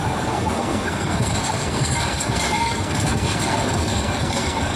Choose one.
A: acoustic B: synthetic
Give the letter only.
B